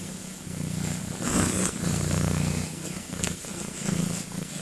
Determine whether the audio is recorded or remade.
remade